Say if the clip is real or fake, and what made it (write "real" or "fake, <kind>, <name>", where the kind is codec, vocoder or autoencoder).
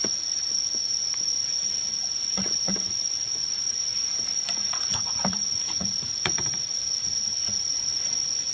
fake, vocoder, Vocos